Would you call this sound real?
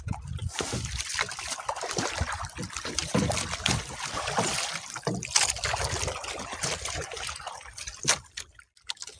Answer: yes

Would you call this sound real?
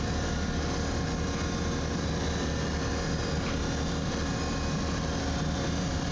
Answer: no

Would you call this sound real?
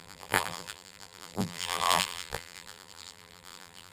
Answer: no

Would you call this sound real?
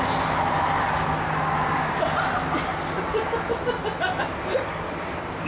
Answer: yes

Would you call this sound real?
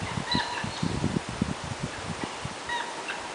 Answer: yes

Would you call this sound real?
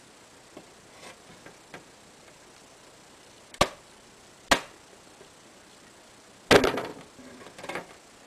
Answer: yes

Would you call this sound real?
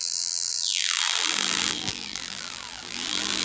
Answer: no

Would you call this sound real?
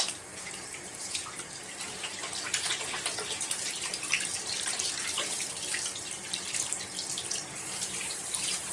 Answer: no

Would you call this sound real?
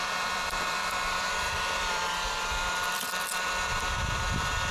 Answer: no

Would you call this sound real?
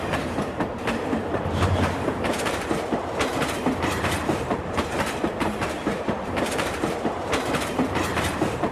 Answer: no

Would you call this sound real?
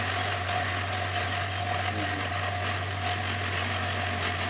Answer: yes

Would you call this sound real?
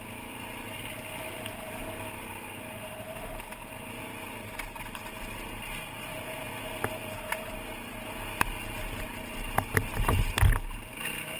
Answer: yes